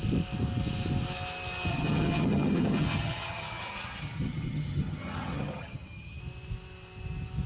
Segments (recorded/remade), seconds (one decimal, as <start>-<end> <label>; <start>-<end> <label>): 0.0-1.7 recorded; 1.7-6.2 remade; 6.2-7.5 recorded